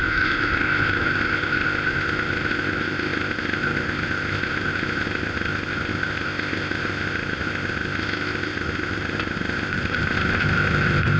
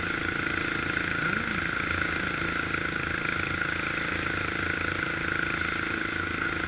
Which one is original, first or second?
second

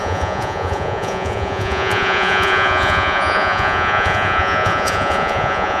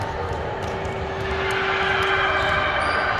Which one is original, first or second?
second